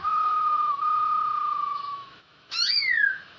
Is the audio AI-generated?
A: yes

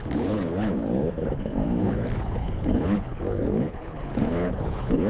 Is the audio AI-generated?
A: yes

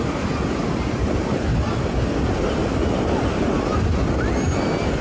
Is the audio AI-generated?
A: no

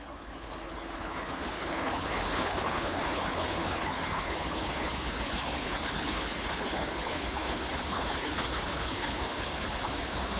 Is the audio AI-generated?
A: yes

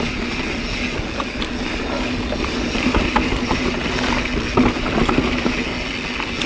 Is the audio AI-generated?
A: no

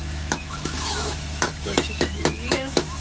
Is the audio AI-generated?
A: yes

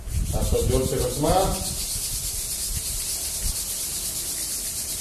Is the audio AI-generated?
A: no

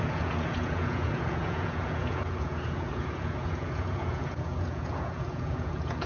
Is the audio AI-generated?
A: yes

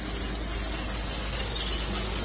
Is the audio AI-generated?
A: no